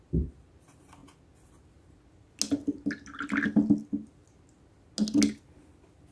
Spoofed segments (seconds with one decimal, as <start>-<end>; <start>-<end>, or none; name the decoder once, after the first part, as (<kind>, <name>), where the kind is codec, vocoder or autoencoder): none